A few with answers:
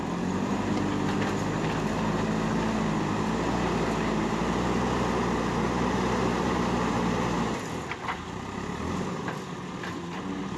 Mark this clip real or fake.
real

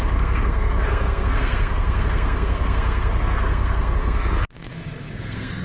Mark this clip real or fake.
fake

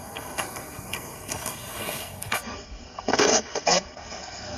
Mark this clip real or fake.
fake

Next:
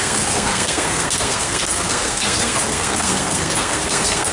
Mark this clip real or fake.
fake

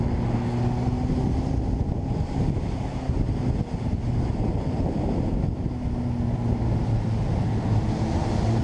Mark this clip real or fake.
real